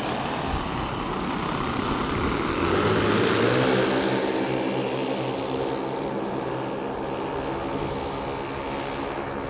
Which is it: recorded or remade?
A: recorded